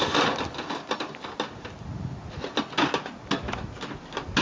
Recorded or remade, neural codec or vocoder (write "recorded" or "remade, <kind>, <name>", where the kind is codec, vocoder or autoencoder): recorded